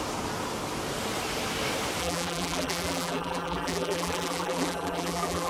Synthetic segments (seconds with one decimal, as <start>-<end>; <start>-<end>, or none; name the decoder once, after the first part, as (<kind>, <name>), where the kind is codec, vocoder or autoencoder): 2.0-5.5 (vocoder, BigVGAN v2)

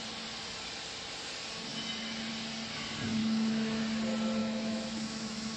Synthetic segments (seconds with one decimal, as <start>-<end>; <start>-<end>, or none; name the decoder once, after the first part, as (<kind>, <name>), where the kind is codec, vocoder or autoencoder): 3.2-3.8 (autoencoder, DAC-VAE); 4.4-5.6

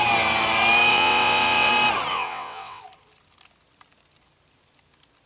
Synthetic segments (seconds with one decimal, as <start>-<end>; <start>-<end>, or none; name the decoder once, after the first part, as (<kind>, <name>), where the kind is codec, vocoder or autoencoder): 0.9-1.7 (vocoder, WaveNeXt); 2.1-2.8